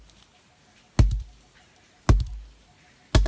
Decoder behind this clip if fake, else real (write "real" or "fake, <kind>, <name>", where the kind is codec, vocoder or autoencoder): real